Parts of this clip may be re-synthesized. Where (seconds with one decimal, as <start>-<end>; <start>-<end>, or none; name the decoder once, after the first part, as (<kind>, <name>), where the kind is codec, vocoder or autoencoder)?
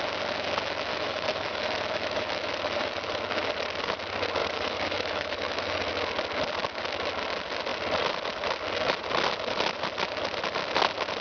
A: 0.9-3.5 (autoencoder, DAC-VAE); 4.4-5.9